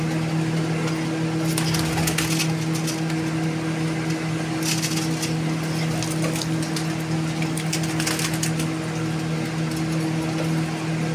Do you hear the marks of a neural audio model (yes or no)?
no